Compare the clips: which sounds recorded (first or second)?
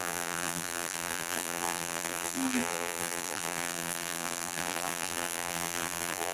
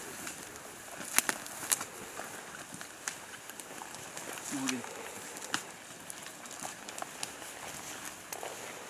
second